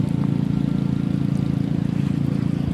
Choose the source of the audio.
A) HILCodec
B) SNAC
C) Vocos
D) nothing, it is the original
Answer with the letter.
D